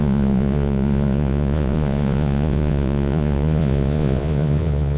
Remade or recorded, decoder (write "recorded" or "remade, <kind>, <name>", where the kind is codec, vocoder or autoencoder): remade, vocoder, Vocos